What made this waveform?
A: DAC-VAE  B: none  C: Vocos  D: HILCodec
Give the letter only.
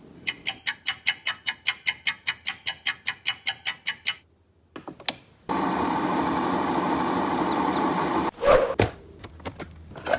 B